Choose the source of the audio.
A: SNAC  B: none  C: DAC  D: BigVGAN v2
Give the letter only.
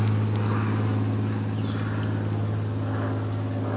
B